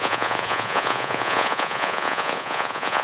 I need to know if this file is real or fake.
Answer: fake